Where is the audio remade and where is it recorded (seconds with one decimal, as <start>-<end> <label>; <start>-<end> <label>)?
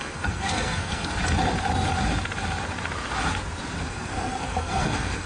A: 0.0-1.2 remade; 1.2-3.8 recorded; 3.8-5.3 remade